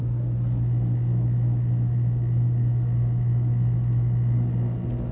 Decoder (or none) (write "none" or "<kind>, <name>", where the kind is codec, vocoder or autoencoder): none